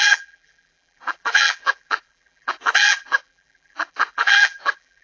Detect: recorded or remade remade